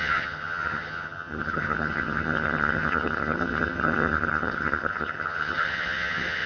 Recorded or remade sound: remade